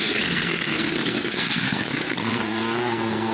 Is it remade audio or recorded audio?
remade